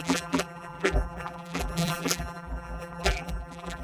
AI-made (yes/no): yes